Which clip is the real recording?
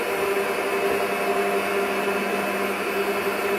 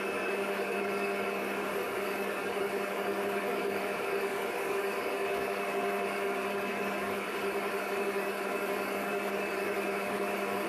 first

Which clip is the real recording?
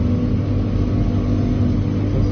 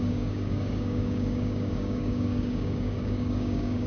first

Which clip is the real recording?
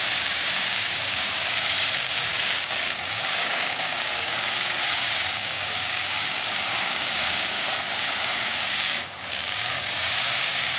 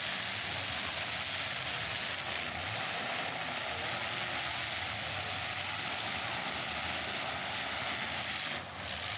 second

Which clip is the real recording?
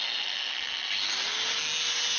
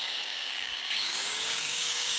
first